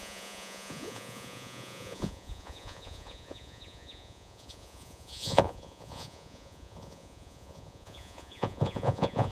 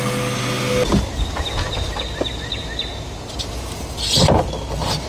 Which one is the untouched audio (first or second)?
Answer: second